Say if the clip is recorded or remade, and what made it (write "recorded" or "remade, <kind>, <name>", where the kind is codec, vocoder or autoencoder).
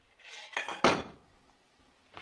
recorded